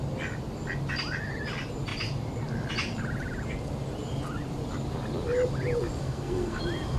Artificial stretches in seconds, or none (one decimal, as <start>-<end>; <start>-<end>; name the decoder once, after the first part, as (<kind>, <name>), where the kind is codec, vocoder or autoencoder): 6.0-6.6 (codec, SNAC)